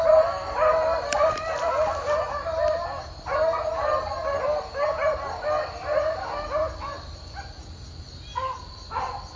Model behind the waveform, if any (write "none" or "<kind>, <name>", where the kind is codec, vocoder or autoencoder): none